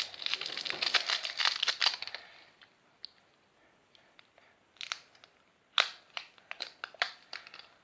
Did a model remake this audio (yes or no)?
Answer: no